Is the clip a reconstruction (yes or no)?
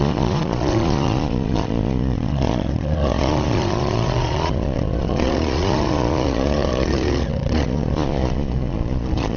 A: yes